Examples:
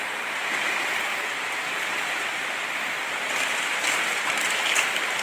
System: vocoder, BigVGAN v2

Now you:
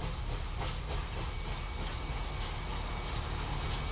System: none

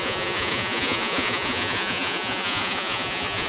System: vocoder, Vocos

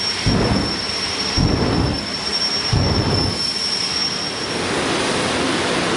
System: none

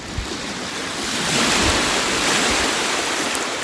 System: none